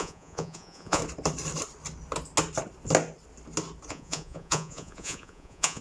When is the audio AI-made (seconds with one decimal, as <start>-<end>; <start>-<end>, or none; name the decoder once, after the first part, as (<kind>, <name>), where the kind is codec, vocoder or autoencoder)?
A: 0.0-1.0 (vocoder, Vocos); 3.9-5.8